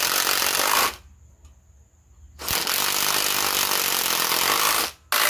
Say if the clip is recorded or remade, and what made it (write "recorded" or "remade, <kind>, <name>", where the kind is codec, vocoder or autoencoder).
recorded